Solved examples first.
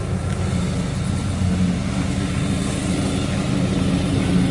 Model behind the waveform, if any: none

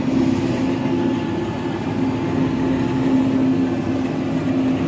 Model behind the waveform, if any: none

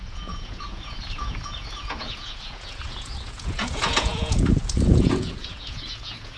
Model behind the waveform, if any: vocoder, Vocos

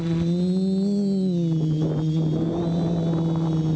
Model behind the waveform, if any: none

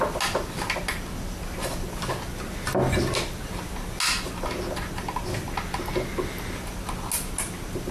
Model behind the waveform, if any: none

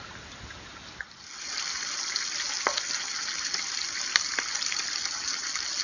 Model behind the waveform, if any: none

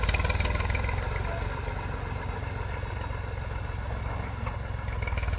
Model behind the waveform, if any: none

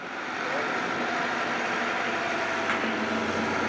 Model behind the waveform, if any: none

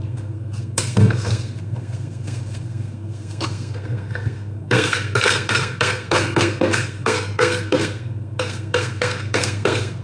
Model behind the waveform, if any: codec, SNAC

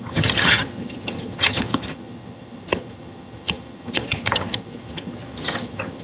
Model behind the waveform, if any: vocoder, HiFi-GAN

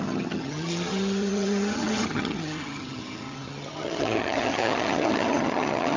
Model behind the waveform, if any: vocoder, HiFi-GAN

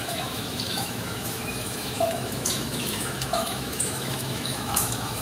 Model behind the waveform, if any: autoencoder, DAC-VAE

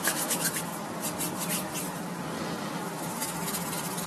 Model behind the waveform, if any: none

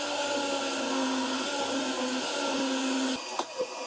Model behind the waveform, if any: none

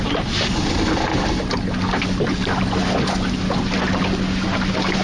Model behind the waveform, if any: none